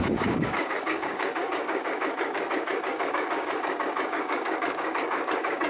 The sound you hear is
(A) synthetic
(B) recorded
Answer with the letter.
A